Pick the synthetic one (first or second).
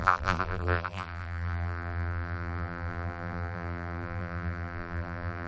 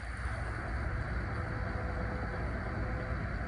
first